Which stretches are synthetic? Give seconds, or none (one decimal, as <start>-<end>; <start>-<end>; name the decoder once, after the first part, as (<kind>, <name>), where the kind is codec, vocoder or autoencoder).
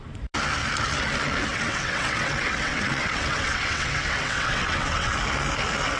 1.5-5.1 (vocoder, WaveNeXt)